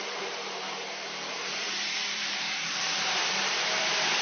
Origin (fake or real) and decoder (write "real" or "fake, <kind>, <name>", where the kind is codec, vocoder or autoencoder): fake, vocoder, BigVGAN v2